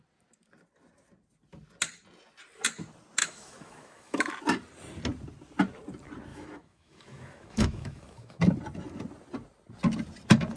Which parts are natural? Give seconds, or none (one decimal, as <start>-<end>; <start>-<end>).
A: 0.0-3.2; 4.3-6.3; 8.4-10.6